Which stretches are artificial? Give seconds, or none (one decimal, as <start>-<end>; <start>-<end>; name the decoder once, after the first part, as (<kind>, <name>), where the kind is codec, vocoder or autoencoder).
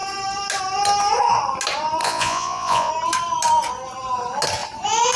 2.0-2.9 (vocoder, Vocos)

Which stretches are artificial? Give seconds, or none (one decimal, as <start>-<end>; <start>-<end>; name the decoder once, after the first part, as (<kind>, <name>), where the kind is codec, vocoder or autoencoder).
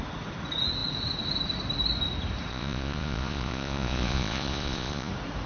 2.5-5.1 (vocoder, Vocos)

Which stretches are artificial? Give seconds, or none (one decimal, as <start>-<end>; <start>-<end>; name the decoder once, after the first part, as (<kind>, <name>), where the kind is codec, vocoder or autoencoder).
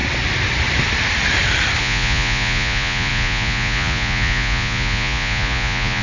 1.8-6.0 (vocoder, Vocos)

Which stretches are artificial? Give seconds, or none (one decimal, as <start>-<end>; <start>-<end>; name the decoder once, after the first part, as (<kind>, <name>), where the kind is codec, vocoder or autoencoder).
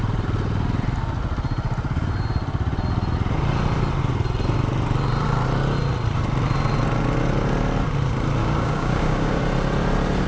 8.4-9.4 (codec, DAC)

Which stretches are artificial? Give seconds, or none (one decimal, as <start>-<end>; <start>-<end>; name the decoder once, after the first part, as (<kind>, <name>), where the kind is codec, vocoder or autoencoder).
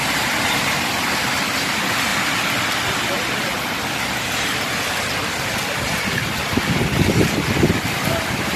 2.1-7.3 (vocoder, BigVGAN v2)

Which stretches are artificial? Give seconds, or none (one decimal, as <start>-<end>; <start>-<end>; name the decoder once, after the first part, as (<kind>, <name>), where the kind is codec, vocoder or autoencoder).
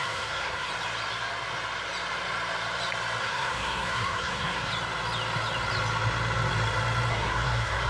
0.0-0.7 (codec, SNAC); 3.2-4.7; 7.1-7.9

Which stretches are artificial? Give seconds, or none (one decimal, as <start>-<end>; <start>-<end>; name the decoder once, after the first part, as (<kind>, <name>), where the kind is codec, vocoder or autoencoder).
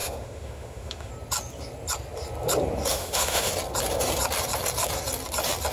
0.0-1.1 (autoencoder, DAC-VAE); 2.9-3.5